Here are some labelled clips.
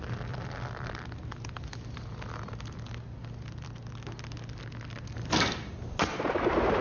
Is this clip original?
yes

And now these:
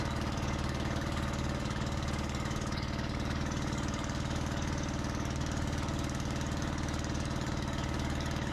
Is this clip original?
no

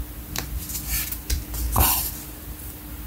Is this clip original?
yes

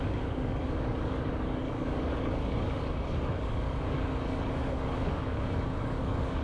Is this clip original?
no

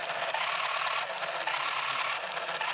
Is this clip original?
yes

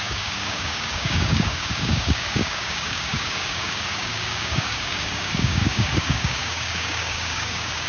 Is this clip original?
no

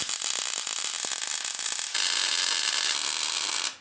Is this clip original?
yes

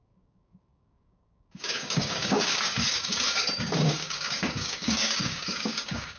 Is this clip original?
no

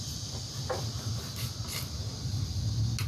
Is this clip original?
yes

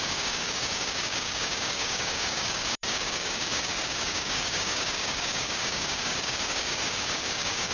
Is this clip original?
no